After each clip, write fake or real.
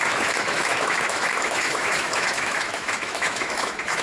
fake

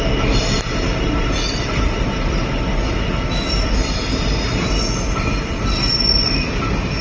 real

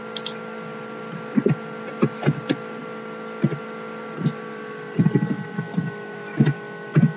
real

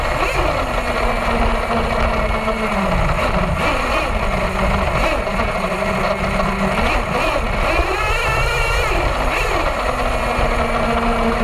real